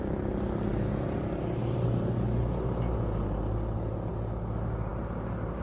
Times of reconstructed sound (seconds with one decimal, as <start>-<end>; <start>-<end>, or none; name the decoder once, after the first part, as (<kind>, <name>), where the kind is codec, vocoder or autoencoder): none